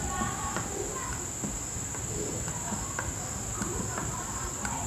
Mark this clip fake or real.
real